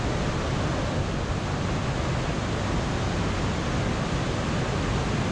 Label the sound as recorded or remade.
recorded